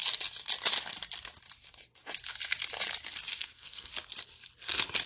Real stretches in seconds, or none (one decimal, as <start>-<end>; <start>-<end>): 0.0-3.3; 3.9-5.1